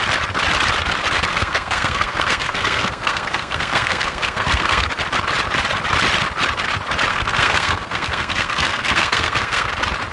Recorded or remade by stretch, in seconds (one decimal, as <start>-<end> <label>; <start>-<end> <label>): 0.0-1.3 recorded; 1.3-4.9 remade; 4.9-7.1 recorded; 7.1-9.7 remade; 9.7-10.1 recorded

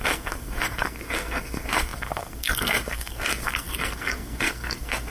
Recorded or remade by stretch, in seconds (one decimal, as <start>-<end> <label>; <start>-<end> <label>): 0.0-5.1 remade

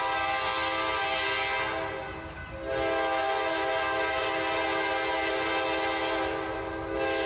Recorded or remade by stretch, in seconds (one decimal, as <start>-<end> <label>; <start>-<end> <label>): 0.0-7.3 recorded

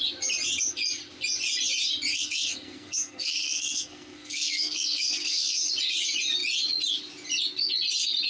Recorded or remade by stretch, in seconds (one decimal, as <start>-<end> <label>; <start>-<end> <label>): 0.0-2.1 recorded; 2.1-5.7 remade; 5.7-8.3 recorded

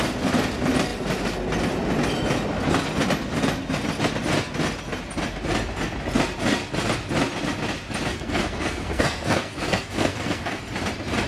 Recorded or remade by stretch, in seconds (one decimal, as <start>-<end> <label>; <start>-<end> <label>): 0.0-8.1 recorded; 8.1-10.6 remade; 10.6-11.3 recorded

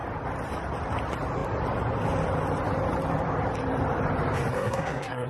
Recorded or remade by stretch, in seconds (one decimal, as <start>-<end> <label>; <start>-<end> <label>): 0.0-4.5 recorded; 4.5-5.3 remade

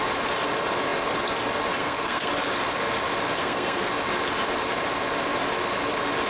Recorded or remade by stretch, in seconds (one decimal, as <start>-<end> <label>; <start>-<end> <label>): 0.0-1.8 recorded; 1.8-2.3 remade; 2.3-3.4 recorded; 3.4-3.9 remade; 3.9-6.3 recorded